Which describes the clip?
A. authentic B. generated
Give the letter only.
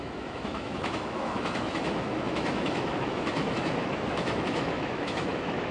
B